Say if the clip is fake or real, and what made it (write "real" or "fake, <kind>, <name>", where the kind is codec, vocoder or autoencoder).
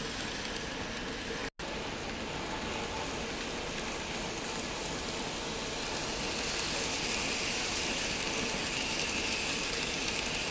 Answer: real